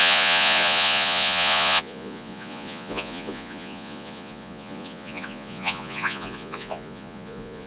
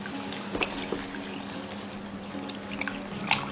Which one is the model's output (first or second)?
first